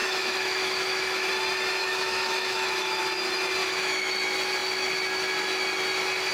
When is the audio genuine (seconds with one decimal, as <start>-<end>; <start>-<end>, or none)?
1.3-1.8; 3.0-3.6; 4.1-6.3